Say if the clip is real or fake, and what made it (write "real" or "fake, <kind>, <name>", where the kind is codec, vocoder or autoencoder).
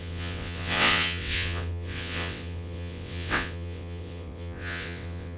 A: fake, vocoder, WaveNeXt